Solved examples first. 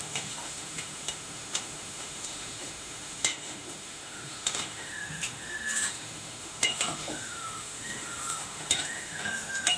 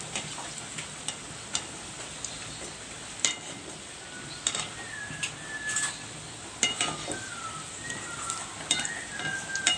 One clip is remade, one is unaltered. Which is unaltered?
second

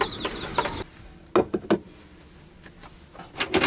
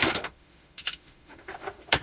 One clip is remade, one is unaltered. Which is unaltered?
first